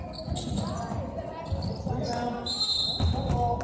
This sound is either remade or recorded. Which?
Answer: recorded